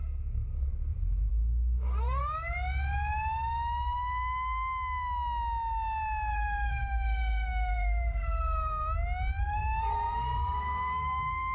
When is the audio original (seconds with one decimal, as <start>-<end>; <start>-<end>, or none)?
0.7-1.3; 2.2-6.3; 8.8-9.4